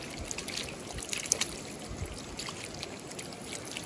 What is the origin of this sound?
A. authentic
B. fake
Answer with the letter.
A